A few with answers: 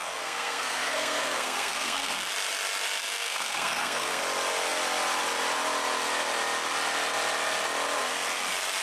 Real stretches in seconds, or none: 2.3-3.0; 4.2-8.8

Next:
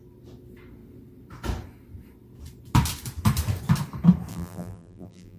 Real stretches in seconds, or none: 0.0-4.3